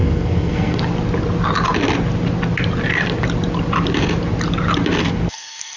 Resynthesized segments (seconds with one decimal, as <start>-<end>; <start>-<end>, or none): 0.0-0.8; 5.0-5.8